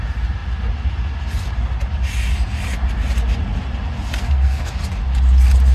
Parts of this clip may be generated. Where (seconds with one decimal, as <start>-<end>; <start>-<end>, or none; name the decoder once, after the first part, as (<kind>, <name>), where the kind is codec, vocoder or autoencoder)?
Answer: 4.2-4.7 (codec, SNAC)